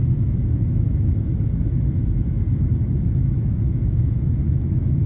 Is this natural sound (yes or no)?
no